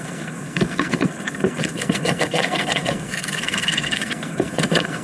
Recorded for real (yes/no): no